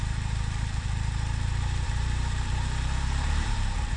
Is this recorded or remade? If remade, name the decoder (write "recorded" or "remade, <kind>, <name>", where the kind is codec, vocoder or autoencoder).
remade, vocoder, BigVGAN v2